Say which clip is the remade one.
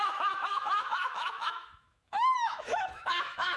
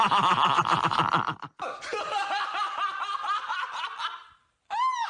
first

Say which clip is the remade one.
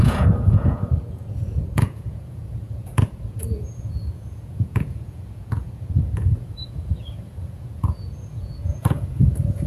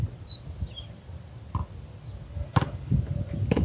first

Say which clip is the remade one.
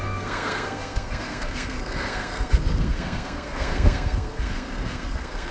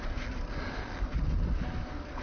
first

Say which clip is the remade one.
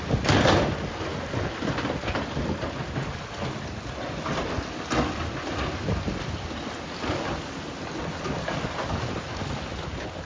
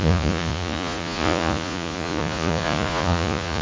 second